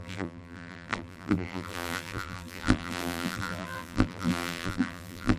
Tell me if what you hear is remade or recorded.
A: remade